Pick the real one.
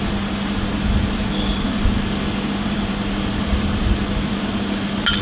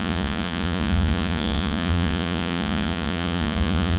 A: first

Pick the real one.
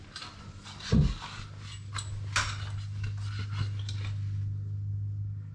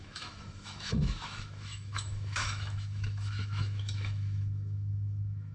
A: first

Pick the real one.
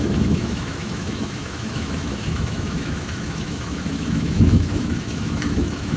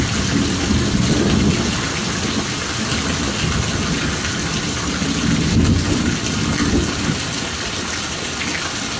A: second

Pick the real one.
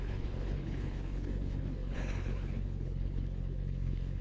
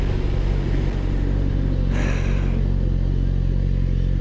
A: second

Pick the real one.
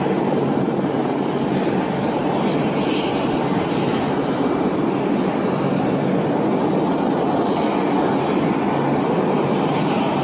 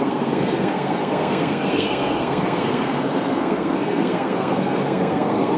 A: first